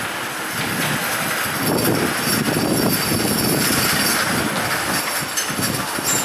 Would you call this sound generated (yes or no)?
no